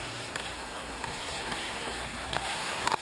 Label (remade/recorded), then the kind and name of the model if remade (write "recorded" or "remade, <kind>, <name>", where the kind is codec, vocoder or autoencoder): remade, codec, SNAC